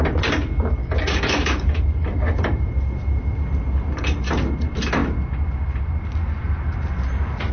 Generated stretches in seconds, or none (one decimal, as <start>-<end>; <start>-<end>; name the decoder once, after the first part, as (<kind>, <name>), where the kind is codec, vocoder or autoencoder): 0.8-1.8 (codec, DAC)